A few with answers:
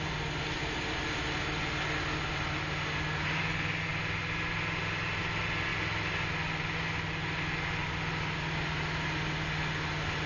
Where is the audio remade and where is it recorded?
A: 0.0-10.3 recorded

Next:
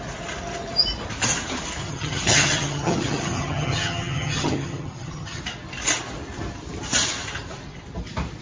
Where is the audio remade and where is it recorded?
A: 0.0-1.8 recorded; 1.8-5.4 remade; 5.4-8.4 recorded

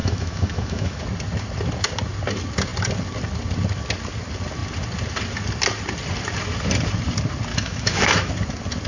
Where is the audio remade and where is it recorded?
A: 0.0-1.0 remade; 1.0-7.5 recorded; 7.5-8.3 remade; 8.3-8.9 recorded

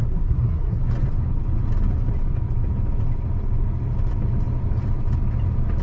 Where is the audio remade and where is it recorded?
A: 0.0-0.8 remade; 0.8-5.8 recorded